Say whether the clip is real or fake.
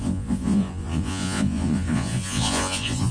fake